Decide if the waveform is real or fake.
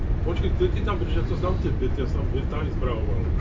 fake